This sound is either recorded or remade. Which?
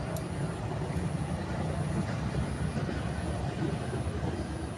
recorded